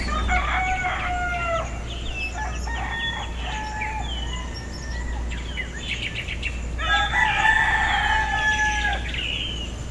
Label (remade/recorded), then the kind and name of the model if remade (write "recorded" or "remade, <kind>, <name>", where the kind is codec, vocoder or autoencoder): recorded